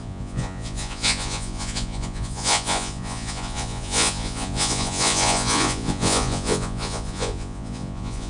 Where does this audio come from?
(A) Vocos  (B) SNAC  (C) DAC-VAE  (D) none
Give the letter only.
A